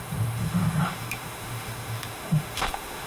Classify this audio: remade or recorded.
remade